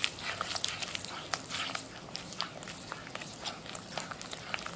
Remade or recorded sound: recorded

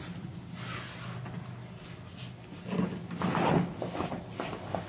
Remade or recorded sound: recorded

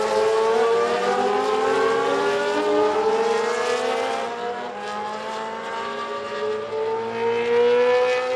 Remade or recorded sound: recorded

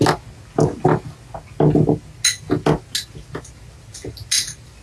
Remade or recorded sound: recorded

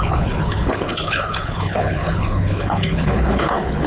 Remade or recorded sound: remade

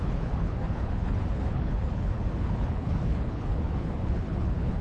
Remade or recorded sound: remade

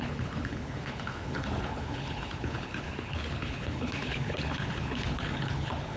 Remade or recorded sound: remade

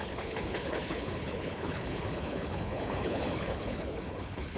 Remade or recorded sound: remade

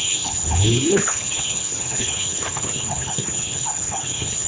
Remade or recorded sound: remade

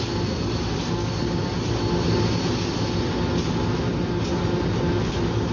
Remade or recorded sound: recorded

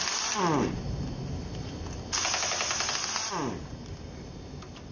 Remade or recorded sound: recorded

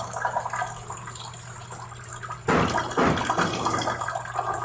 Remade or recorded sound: recorded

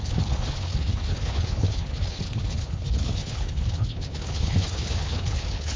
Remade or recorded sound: remade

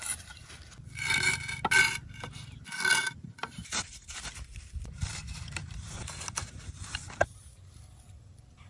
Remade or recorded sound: recorded